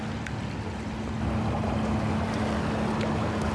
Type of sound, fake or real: real